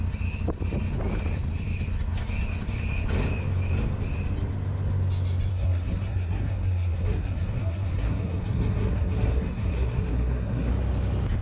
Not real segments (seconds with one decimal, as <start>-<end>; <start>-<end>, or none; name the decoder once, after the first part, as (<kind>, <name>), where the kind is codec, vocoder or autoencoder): 5.5-10.7 (codec, SNAC)